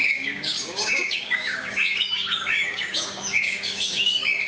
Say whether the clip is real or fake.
fake